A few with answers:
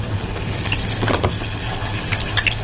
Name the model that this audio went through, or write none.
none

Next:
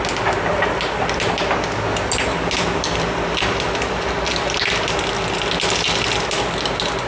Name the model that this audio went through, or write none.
none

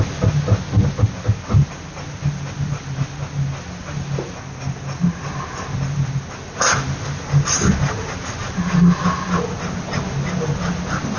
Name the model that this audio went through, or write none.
none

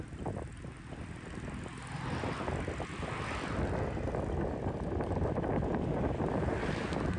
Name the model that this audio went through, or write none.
none